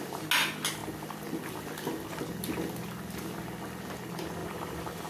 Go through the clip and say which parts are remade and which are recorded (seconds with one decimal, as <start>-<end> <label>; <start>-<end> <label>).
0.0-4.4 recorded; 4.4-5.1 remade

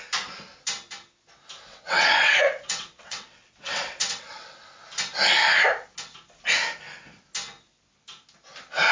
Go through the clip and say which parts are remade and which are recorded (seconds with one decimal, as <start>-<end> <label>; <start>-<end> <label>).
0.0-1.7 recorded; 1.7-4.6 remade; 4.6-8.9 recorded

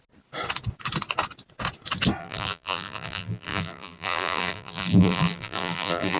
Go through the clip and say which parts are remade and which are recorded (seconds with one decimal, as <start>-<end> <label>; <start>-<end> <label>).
0.0-2.2 recorded; 2.2-6.2 remade